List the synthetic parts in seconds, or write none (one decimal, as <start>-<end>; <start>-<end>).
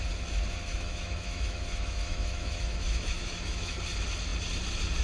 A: 0.7-3.7